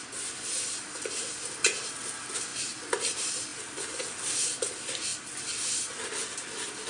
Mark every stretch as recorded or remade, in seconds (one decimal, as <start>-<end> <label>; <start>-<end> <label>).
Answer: 0.0-6.9 recorded